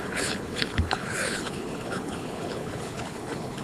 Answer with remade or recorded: remade